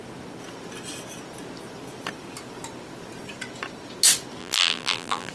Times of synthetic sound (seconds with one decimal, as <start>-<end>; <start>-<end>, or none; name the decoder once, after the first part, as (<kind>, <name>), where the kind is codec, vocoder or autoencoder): 4.4-5.3 (vocoder, BigVGAN v2)